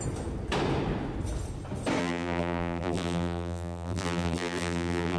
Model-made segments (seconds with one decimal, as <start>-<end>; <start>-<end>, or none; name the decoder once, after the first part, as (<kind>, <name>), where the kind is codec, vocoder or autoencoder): 2.0-5.2 (vocoder, BigVGAN v2)